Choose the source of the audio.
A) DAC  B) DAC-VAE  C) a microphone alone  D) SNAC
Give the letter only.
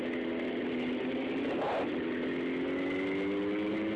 C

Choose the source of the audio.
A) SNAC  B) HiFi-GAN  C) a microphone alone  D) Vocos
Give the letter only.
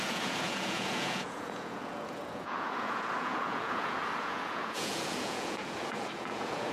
D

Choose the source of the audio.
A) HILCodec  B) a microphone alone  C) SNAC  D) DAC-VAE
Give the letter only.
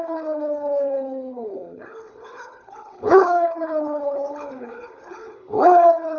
A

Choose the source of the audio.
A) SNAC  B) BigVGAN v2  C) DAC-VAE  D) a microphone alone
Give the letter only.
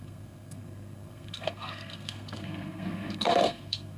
A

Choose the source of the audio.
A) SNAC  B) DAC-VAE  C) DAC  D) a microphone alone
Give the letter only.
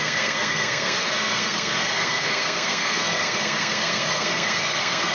A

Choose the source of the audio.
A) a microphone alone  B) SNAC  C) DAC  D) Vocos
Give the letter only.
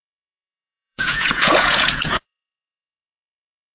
D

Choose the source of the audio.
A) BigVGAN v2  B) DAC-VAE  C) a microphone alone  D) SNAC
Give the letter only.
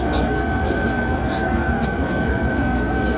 D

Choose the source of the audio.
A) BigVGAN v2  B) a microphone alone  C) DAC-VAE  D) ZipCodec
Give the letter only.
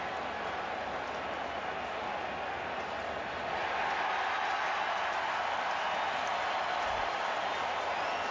B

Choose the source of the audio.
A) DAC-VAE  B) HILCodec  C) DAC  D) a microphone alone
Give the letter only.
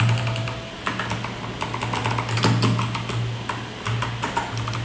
D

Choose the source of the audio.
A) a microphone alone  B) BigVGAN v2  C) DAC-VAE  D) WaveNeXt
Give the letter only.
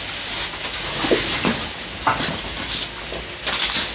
A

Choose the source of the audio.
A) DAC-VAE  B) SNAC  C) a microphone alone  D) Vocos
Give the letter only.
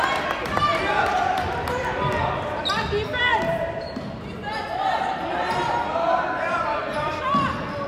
C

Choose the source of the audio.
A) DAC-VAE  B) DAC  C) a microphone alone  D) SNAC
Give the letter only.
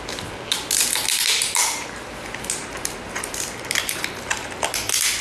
C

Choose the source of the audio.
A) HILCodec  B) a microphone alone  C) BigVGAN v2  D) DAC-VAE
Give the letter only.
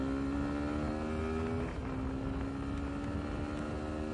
B